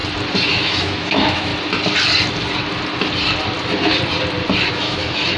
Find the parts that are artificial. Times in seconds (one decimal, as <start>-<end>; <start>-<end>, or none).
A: 0.5-1.5; 4.7-5.4